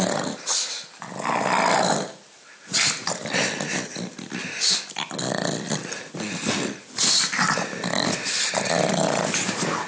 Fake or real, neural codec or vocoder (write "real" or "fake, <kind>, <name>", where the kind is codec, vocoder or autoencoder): real